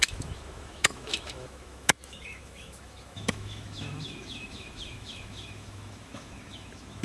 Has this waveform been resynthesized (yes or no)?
yes